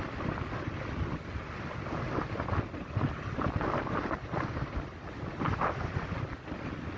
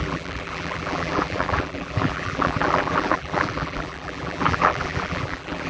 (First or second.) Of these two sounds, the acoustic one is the first